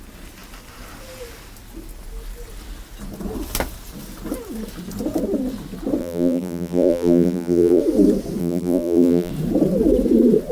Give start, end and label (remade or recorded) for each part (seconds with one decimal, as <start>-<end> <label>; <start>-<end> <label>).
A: 0.0-6.0 recorded; 6.0-7.8 remade; 7.8-8.4 recorded; 8.4-9.3 remade; 9.3-10.5 recorded